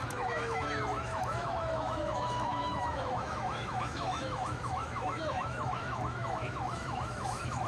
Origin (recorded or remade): remade